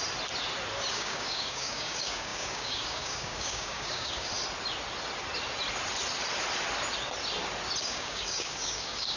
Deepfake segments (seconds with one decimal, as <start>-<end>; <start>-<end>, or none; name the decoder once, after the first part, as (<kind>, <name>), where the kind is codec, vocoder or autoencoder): 0.9-4.3 (codec, DAC); 7.8-9.2